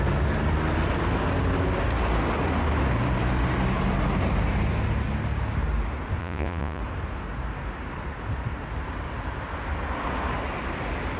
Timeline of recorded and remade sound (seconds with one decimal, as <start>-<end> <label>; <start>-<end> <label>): 0.0-6.2 recorded; 6.2-6.8 remade; 6.8-11.2 recorded